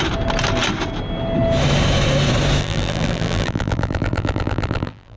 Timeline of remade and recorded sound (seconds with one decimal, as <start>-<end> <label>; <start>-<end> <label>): 0.0-2.6 recorded; 2.6-5.2 remade